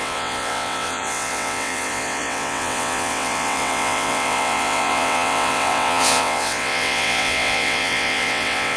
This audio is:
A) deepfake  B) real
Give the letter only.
A